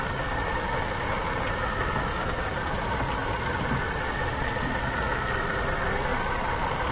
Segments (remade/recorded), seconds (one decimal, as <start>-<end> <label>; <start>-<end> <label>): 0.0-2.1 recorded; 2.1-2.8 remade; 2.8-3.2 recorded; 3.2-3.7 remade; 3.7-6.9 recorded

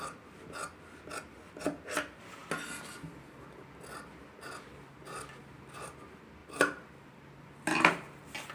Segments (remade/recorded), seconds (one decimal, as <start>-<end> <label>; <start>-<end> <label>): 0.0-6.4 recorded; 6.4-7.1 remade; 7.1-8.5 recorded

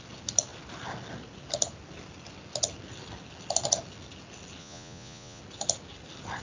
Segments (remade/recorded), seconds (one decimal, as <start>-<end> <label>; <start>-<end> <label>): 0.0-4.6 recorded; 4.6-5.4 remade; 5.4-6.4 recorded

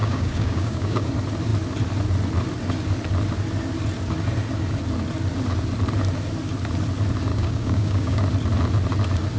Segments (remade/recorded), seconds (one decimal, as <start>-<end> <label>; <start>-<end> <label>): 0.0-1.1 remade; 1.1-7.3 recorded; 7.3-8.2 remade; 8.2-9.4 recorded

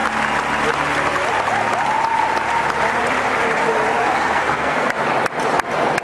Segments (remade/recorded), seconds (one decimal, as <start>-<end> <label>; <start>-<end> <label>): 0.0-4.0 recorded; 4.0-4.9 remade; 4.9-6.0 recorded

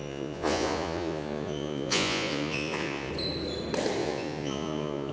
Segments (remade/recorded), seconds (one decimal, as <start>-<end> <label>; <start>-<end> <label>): 0.0-3.1 remade; 3.1-4.0 recorded; 4.0-5.1 remade

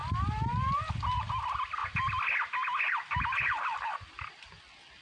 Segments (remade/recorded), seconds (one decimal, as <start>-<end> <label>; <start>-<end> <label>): 0.0-5.0 recorded

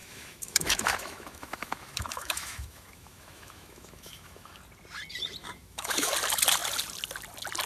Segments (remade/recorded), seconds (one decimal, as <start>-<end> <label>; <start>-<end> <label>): 0.0-4.6 remade; 4.6-5.4 recorded; 5.4-6.1 remade; 6.1-7.7 recorded